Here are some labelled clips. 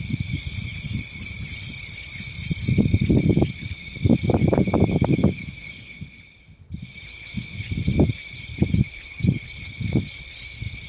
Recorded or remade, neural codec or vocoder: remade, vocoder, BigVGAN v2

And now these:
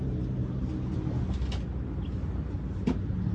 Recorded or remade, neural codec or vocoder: recorded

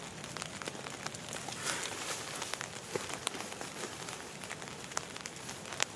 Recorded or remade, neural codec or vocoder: recorded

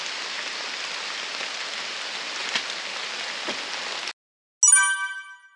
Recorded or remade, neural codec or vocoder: recorded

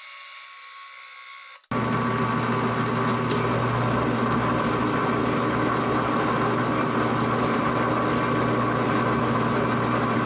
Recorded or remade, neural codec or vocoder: recorded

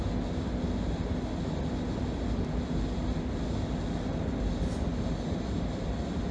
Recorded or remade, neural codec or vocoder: recorded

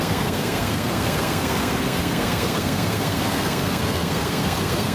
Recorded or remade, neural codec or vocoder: remade, codec, SNAC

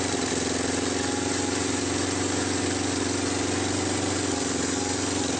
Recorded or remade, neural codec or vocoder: recorded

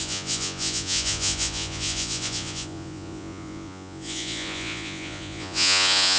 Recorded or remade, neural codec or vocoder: remade, vocoder, Vocos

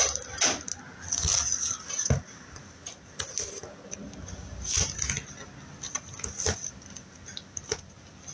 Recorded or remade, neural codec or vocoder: recorded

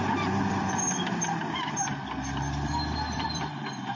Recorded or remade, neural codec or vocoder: remade, vocoder, BigVGAN v2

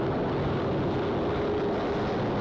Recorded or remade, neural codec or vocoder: recorded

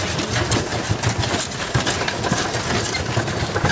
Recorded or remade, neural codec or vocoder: recorded